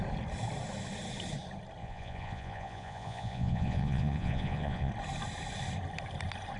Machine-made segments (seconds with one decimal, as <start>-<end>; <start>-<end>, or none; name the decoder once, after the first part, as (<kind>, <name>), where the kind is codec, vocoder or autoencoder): 1.8-4.9 (vocoder, Vocos)